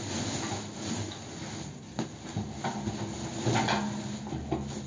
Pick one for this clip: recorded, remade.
recorded